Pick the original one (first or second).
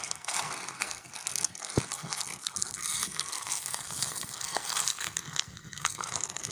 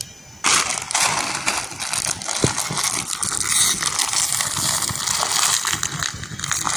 second